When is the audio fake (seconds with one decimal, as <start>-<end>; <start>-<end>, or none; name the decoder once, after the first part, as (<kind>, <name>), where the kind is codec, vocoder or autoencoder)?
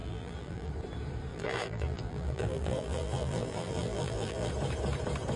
0.0-0.7 (vocoder, BigVGAN v2); 1.3-4.5